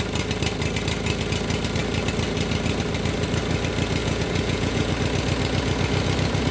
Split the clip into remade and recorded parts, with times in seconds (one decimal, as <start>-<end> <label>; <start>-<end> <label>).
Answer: 0.0-4.0 recorded; 4.0-4.9 remade; 4.9-6.5 recorded